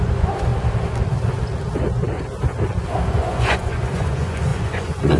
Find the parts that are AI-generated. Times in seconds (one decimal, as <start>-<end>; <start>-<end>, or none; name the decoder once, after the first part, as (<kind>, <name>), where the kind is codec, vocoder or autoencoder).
0.0-0.5 (vocoder, Vocos); 3.1-5.2

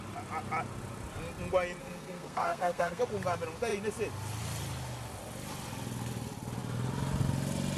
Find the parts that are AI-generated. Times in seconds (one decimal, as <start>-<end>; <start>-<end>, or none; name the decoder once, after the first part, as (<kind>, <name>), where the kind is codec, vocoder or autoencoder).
1.8-3.0 (codec, SNAC)

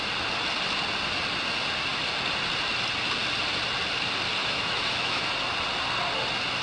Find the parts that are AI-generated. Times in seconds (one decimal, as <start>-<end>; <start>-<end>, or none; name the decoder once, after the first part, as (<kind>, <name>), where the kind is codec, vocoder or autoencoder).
4.4-5.3 (autoencoder, DAC-VAE)